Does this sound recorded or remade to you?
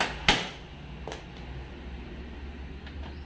recorded